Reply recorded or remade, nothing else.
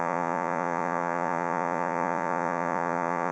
remade